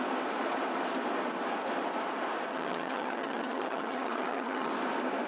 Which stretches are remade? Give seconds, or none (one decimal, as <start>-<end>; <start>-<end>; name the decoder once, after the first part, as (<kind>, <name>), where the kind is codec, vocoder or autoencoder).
2.5-4.7 (vocoder, HiFi-GAN)